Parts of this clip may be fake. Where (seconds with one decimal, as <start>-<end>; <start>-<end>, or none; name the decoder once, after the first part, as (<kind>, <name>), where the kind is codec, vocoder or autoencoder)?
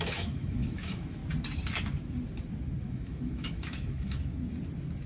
0.0-1.2 (autoencoder, DAC-VAE); 2.8-4.3